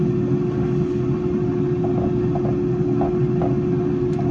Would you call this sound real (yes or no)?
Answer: yes